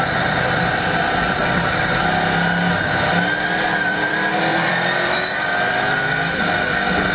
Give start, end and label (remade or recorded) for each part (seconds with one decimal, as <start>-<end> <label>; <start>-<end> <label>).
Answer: 0.0-1.4 remade; 1.4-3.7 recorded; 3.7-7.1 remade